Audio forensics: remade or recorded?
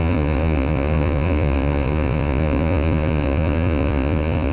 remade